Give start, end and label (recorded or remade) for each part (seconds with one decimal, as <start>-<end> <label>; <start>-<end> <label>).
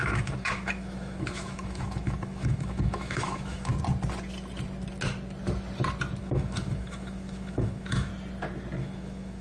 0.0-3.7 remade; 3.7-6.2 recorded; 6.2-8.1 remade; 8.1-8.8 recorded; 8.8-9.4 remade